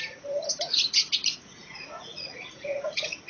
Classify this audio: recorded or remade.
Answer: remade